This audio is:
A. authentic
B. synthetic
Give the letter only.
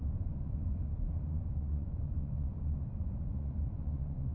B